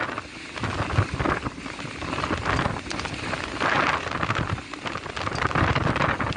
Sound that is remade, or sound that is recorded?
recorded